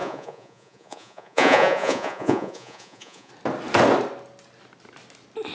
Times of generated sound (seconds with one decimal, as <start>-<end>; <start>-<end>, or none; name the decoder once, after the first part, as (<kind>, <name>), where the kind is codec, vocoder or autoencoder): 0.0-3.3 (vocoder, Vocos)